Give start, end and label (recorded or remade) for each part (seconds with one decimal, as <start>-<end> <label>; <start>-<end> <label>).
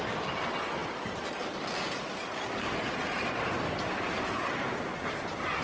0.0-5.6 recorded